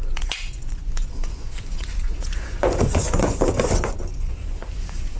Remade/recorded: remade